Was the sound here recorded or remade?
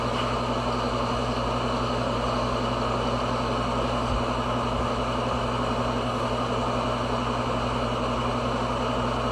recorded